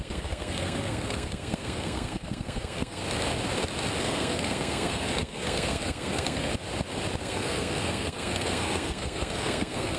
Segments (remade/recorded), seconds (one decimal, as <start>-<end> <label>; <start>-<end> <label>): 0.0-3.0 remade; 3.0-4.0 recorded; 4.0-6.5 remade; 6.5-7.2 recorded; 7.2-10.0 remade